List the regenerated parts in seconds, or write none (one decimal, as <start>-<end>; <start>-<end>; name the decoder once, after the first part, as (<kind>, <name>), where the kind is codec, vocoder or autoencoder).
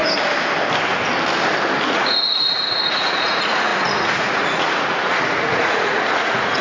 1.9-6.6 (vocoder, Vocos)